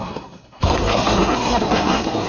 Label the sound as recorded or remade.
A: remade